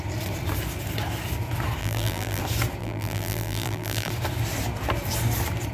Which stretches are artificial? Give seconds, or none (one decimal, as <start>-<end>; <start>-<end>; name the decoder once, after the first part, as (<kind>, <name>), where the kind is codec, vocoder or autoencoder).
1.8-2.4 (vocoder, BigVGAN v2); 2.8-4.1